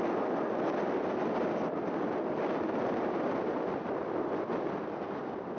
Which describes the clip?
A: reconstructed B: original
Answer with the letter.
B